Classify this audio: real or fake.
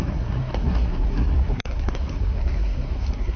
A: fake